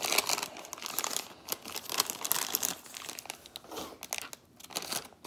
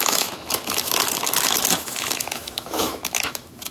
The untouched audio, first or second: first